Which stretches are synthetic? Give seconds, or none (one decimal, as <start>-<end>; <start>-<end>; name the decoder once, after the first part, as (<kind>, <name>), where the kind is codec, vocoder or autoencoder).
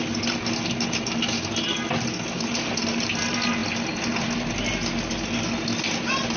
none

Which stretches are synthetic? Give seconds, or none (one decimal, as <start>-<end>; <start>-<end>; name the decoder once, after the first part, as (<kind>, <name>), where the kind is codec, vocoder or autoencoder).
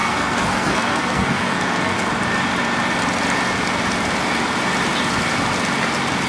0.0-2.1 (codec, SNAC)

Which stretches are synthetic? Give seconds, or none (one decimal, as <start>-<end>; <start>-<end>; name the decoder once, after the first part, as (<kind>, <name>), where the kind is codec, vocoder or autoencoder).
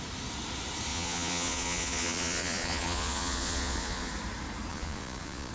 0.9-4.1 (vocoder, Vocos); 4.7-5.5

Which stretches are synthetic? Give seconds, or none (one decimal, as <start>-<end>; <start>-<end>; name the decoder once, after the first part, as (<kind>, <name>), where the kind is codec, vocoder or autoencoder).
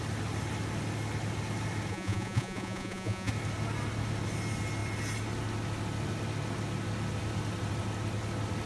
1.9-3.3 (vocoder, Vocos)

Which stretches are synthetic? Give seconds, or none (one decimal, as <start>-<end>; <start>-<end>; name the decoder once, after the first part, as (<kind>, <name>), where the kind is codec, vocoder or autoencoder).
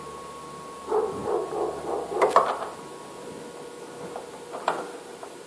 none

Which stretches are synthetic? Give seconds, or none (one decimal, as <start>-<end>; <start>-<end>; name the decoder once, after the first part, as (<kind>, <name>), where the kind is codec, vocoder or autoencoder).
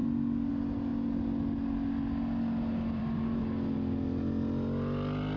none